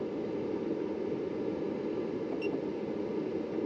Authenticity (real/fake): real